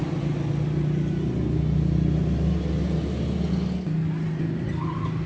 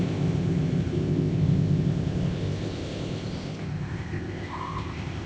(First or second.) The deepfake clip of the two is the second